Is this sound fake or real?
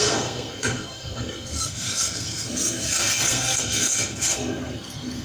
fake